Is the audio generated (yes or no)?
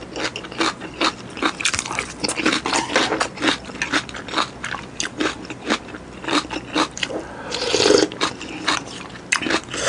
no